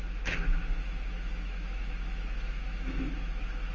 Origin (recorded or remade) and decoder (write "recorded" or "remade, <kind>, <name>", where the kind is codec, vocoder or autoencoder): remade, autoencoder, DAC-VAE